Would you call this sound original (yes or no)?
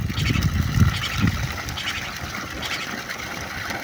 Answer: yes